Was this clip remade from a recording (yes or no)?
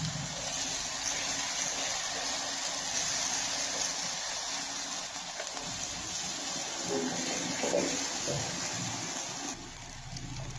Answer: no